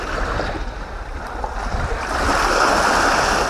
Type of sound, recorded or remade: remade